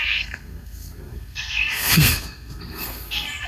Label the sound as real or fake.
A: fake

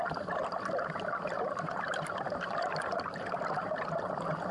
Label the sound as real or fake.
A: real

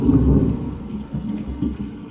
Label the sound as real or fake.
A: fake